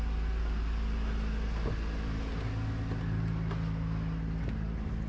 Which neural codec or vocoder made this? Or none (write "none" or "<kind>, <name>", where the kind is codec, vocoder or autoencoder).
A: none